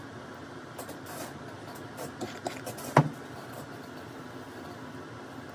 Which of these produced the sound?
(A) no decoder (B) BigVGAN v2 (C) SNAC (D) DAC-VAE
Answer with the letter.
A